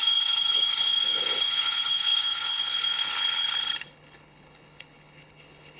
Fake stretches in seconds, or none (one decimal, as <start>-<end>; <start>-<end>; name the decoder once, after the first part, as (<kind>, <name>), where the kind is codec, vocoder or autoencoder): 0.0-5.8 (codec, HILCodec)